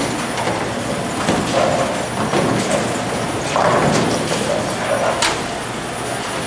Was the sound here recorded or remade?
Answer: recorded